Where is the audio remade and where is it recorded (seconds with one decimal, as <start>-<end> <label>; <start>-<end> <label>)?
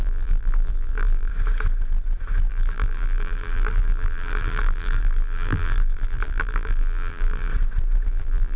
0.0-1.3 remade; 1.3-2.5 recorded; 2.5-7.5 remade; 7.5-8.1 recorded; 8.1-8.6 remade